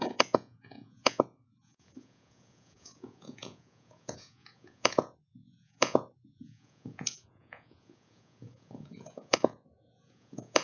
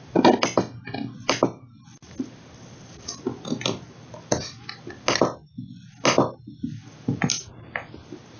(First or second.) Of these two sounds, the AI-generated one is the first